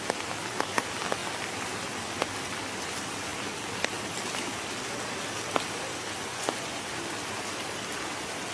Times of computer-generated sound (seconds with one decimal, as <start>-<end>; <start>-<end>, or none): 6.3-6.8